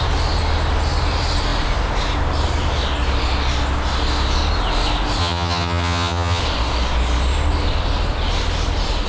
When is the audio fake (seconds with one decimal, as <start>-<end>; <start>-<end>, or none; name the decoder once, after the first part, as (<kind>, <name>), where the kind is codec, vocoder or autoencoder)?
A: 5.2-6.4 (vocoder, HiFi-GAN)

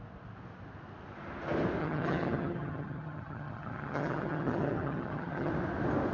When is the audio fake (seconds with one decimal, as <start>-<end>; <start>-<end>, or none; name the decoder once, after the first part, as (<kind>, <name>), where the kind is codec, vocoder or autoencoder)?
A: 1.8-5.5 (vocoder, HiFi-GAN)

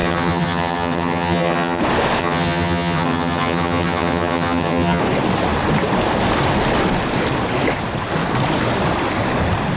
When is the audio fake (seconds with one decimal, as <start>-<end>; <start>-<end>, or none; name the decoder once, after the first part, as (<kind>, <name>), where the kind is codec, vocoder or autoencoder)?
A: 0.0-1.8 (vocoder, HiFi-GAN); 2.2-5.0